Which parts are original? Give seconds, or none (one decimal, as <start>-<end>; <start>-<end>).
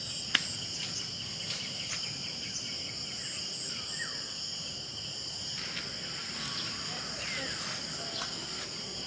0.0-9.1